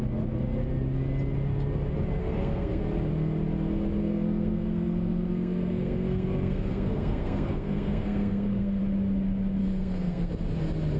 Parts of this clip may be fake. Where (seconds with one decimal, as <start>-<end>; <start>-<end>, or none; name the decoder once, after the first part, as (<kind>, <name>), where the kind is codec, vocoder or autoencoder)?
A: 2.2-2.8 (codec, SNAC); 4.0-8.8; 9.6-10.3